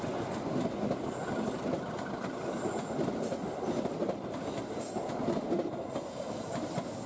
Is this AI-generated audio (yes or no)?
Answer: no